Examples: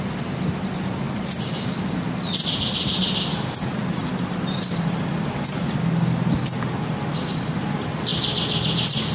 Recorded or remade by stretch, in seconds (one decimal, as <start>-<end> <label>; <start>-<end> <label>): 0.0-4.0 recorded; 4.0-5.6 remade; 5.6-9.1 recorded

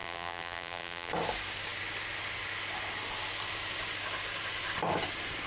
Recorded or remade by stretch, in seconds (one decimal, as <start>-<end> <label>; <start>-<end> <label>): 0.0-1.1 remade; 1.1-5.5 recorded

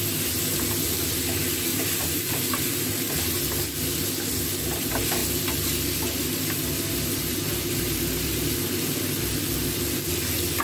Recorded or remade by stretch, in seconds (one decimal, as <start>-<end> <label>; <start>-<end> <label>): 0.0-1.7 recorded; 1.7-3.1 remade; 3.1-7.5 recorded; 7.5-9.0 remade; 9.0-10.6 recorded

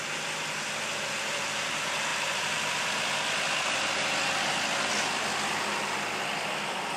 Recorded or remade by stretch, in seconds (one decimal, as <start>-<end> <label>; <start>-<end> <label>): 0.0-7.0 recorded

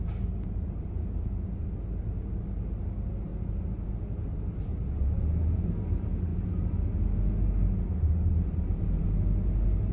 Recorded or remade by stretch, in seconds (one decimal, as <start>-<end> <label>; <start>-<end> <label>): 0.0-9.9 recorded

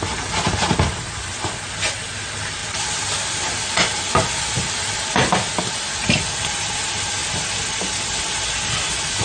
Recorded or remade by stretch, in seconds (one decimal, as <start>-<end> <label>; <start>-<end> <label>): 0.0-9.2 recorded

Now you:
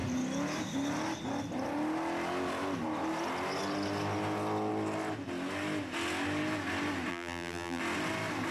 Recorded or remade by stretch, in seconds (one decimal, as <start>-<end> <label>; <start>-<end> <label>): 0.0-7.1 recorded; 7.1-7.8 remade; 7.8-8.5 recorded

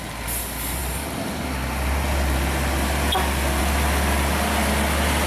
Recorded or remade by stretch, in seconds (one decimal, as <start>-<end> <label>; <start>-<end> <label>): 0.0-5.3 recorded